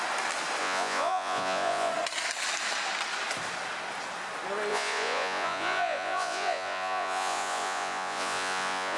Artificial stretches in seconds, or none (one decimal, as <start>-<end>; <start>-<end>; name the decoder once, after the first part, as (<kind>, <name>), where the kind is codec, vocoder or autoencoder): 0.6-1.9 (vocoder, Vocos); 4.7-9.0